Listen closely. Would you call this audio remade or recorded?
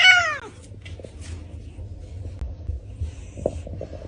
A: recorded